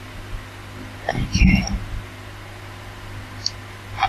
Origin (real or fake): real